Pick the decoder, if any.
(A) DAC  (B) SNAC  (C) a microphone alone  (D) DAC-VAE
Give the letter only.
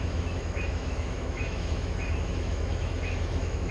D